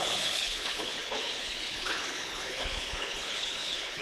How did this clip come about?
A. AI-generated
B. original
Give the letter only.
A